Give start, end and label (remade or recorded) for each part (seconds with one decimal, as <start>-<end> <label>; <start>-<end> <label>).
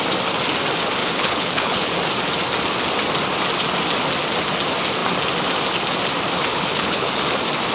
0.0-1.0 recorded; 1.0-1.9 remade; 1.9-6.5 recorded; 6.5-7.1 remade; 7.1-7.7 recorded